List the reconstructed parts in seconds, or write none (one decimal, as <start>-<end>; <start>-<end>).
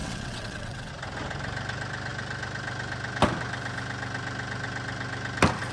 0.0-0.9